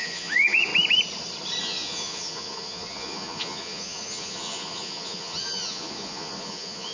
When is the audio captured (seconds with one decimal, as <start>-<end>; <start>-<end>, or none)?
0.7-1.6